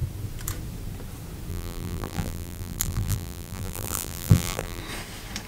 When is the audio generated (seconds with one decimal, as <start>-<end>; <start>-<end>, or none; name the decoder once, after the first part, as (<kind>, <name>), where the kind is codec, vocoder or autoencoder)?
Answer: 1.5-4.8 (vocoder, BigVGAN v2)